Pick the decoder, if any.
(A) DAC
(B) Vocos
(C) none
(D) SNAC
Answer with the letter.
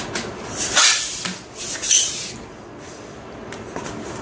C